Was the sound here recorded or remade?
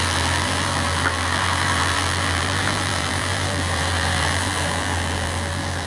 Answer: remade